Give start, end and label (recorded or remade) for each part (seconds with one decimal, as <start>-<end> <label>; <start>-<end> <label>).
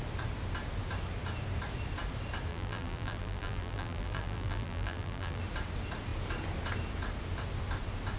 0.0-2.5 recorded; 2.5-5.4 remade; 5.4-8.2 recorded